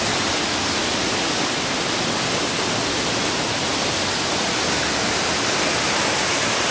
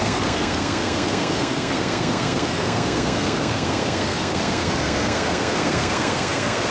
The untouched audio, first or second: first